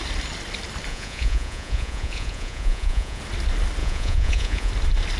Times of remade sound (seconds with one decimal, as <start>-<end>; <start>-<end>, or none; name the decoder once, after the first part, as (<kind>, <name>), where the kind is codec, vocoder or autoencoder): 0.9-3.2 (vocoder, Vocos); 3.8-4.7